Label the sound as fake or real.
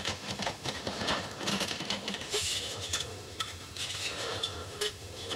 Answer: fake